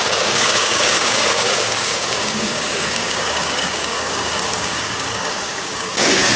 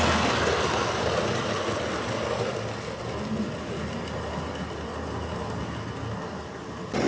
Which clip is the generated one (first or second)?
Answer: first